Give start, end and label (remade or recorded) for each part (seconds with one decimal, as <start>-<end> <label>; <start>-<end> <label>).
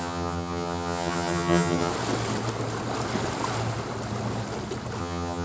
0.0-1.9 remade; 1.9-5.0 recorded; 5.0-5.4 remade